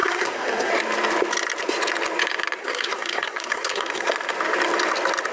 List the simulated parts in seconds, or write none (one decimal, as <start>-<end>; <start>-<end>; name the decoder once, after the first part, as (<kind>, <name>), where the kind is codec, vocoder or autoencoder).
0.0-0.7 (codec, SNAC); 2.6-4.1